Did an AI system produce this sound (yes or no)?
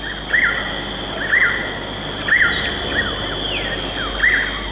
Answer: no